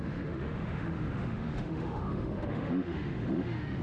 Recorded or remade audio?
remade